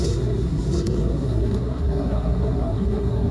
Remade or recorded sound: remade